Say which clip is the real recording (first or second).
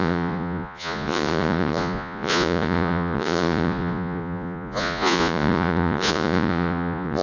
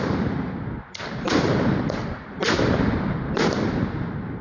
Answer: second